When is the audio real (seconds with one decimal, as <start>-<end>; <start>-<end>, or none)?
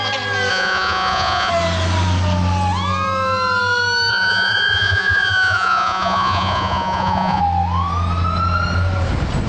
0.0-0.5; 1.5-4.1; 7.4-9.5